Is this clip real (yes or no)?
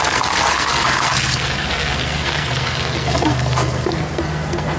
no